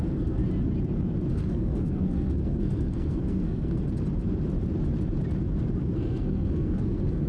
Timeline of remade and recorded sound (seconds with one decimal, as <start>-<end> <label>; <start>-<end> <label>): 0.0-0.4 remade; 0.4-1.3 recorded; 1.3-3.8 remade; 3.8-5.8 recorded; 5.8-7.3 remade